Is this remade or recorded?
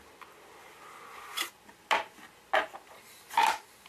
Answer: recorded